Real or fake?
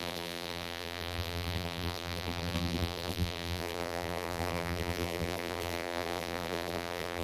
fake